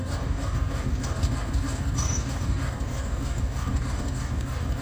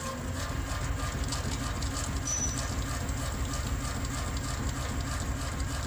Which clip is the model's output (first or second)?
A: first